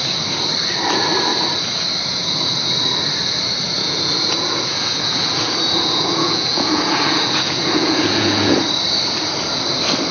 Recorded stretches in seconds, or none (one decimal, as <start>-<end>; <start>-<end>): 0.0-3.8; 8.7-10.1